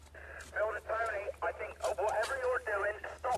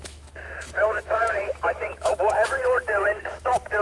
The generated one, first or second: second